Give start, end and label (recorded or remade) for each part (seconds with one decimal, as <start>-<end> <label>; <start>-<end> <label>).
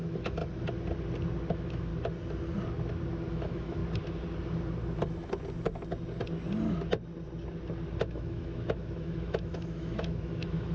0.0-0.4 remade; 0.4-1.5 recorded; 1.5-1.9 remade; 1.9-3.3 recorded; 3.3-3.8 remade; 3.8-8.0 recorded; 8.0-10.7 remade